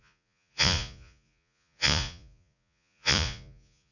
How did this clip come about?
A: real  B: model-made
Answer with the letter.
B